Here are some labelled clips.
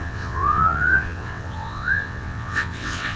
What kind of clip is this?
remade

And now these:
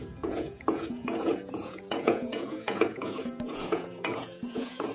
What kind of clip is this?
remade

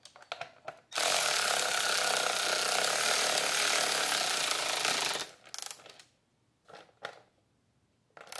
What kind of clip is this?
recorded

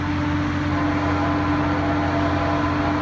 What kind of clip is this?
recorded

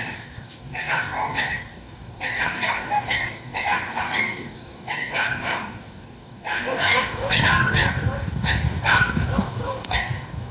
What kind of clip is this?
remade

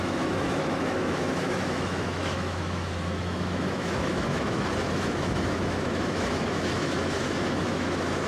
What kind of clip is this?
remade